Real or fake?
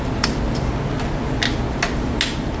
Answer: real